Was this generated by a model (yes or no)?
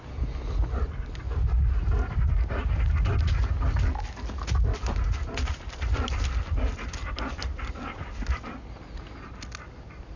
no